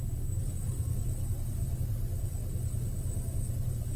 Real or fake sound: fake